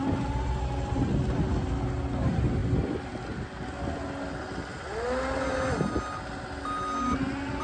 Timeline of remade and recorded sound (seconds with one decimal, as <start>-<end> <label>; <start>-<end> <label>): 0.0-7.6 recorded

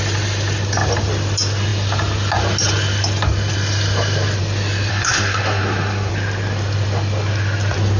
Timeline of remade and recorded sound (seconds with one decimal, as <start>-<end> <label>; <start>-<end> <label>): 0.0-4.9 recorded; 4.9-6.1 remade; 6.1-8.0 recorded

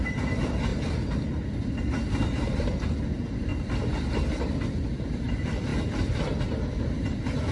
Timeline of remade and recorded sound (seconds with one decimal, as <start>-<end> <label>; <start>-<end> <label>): 0.0-3.5 recorded; 3.5-4.1 remade; 4.1-7.5 recorded